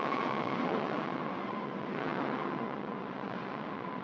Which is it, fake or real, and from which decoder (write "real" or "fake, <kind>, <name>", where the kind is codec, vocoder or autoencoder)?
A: fake, vocoder, WaveNeXt